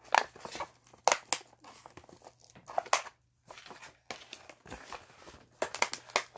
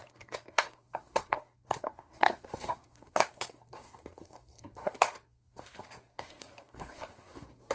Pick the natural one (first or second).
first